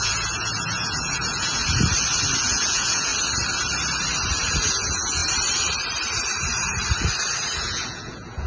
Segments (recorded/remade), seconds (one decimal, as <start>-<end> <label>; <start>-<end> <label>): 0.0-1.6 remade; 1.6-2.4 recorded; 2.4-3.1 remade; 3.1-4.7 recorded; 4.7-5.2 remade; 5.2-7.6 recorded; 7.6-8.5 remade